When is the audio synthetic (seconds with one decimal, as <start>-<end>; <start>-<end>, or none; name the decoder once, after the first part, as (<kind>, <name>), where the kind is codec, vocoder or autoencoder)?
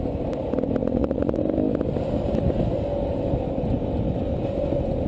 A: 0.8-1.4 (vocoder, Vocos)